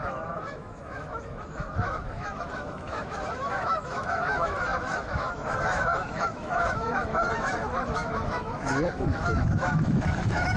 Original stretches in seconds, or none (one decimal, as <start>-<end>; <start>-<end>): none